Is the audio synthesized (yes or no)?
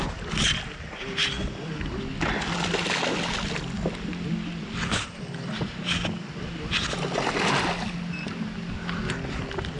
no